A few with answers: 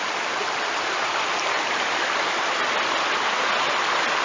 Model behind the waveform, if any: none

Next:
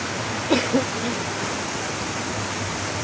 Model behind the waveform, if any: none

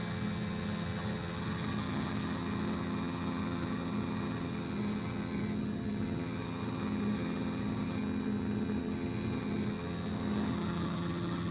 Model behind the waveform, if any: vocoder, HiFi-GAN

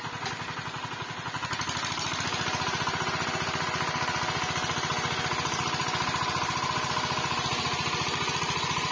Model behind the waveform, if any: none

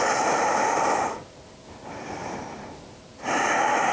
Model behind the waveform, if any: none